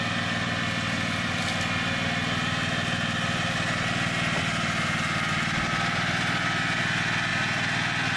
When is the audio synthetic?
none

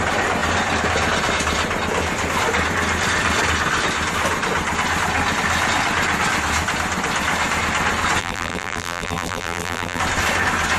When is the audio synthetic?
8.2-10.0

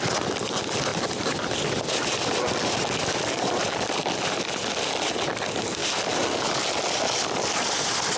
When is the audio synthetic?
0.9-5.1; 5.8-7.0

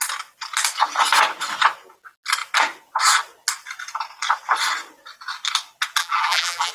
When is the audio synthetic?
6.0-6.7

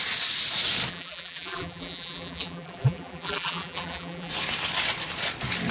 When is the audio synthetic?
0.9-4.3